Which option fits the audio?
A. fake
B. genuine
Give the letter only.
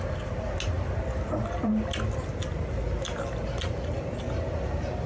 B